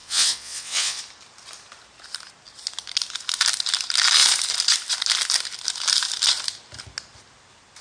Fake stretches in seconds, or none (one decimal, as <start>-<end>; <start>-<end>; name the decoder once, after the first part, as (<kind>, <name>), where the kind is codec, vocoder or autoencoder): 0.0-1.0 (vocoder, WaveNeXt)